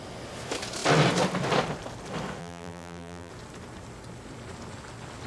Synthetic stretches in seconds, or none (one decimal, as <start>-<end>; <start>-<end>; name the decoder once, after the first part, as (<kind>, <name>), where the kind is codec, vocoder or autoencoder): 2.4-3.3 (vocoder, BigVGAN v2)